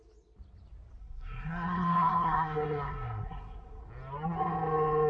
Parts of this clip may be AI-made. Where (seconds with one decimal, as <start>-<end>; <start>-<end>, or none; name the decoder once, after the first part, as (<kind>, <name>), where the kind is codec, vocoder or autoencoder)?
1.0-3.8 (codec, SNAC)